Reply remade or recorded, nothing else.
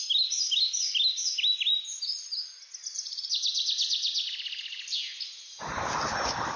recorded